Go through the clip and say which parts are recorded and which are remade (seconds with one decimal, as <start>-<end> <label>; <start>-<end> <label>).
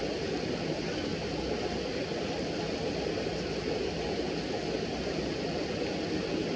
0.0-6.6 recorded